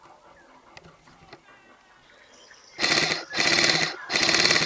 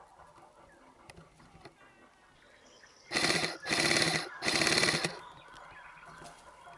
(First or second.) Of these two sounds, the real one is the first